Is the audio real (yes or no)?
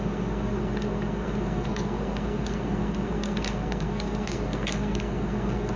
no